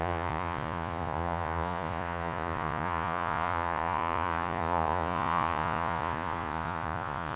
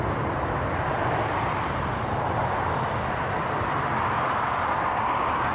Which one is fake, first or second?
first